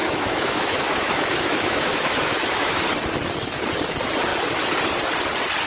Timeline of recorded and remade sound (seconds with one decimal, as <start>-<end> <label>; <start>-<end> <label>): 0.0-2.8 remade; 2.8-5.7 recorded